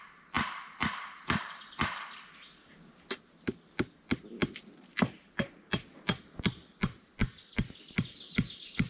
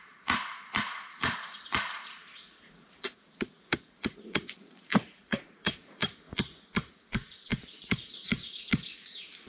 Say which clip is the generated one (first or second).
second